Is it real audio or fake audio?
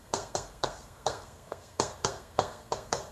fake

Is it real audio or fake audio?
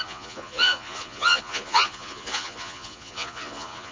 fake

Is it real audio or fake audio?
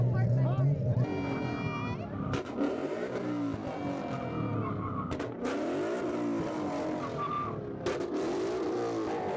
real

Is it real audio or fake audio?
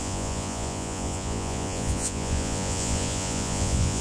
fake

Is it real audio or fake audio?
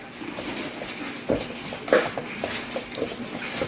real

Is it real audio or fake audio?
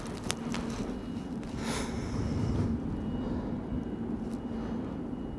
real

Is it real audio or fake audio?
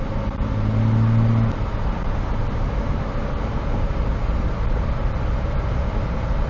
real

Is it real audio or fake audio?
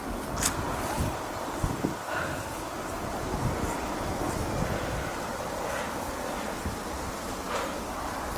real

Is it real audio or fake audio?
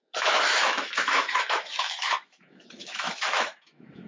fake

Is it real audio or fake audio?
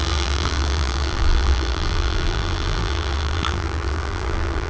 fake